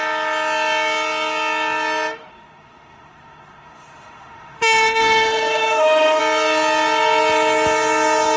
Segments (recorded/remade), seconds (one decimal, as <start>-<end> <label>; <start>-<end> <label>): 0.0-2.3 recorded; 2.3-6.2 remade; 6.2-8.4 recorded